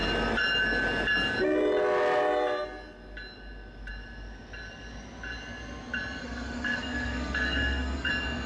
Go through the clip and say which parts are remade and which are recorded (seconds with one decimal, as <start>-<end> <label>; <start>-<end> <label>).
0.0-6.2 recorded; 6.2-8.1 remade; 8.1-8.5 recorded